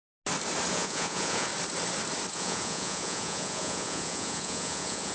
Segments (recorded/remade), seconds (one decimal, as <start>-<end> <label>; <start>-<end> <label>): 0.0-0.7 recorded; 0.7-1.5 remade; 1.5-2.3 recorded; 2.3-5.1 remade